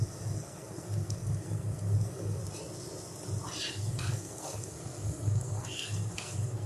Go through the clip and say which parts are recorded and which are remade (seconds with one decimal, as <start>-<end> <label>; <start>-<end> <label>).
0.0-2.4 remade; 2.4-3.7 recorded; 3.7-6.7 remade